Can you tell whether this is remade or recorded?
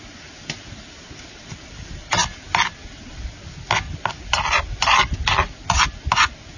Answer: recorded